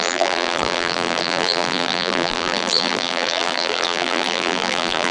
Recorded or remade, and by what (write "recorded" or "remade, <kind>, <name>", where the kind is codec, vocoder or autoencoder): remade, vocoder, BigVGAN v2